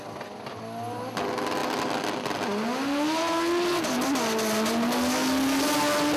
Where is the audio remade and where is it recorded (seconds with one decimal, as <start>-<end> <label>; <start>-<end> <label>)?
0.0-6.2 recorded